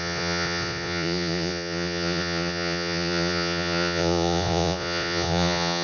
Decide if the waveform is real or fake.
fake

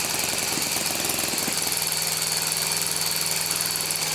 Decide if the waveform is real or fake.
real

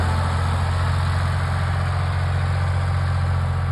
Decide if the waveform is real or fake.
real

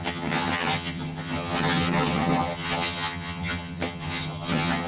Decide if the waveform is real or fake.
fake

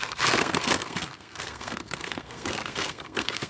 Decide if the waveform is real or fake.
fake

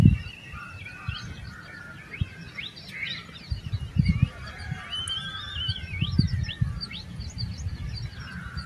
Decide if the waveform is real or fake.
real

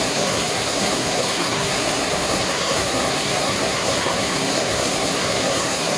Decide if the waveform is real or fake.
fake